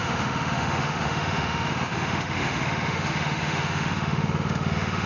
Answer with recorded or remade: remade